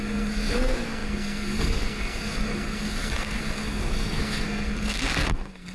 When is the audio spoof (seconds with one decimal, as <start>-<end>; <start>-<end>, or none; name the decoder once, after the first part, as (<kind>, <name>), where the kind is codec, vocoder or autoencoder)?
0.0-5.7 (codec, SNAC)